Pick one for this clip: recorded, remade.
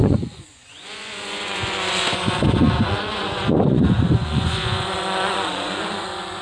remade